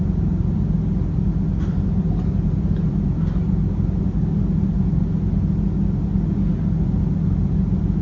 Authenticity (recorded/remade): recorded